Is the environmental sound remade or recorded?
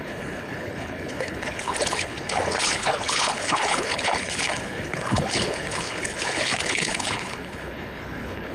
remade